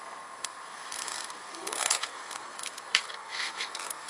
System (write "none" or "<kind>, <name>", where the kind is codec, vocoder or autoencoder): codec, SNAC